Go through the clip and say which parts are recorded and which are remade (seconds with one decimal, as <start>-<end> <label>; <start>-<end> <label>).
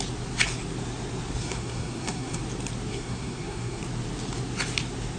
0.0-1.4 recorded; 1.4-2.4 remade; 2.4-2.9 recorded; 2.9-3.8 remade; 3.8-5.2 recorded